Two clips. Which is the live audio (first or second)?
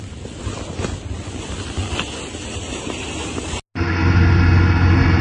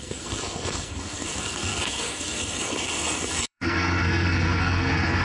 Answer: first